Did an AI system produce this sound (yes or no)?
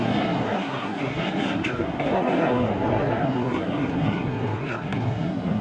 yes